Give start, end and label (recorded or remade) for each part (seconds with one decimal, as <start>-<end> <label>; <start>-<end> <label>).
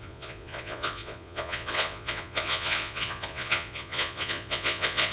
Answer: 0.0-5.1 remade